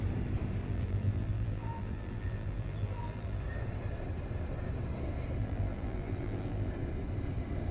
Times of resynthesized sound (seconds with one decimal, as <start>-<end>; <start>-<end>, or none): 0.6-3.4; 5.4-6.7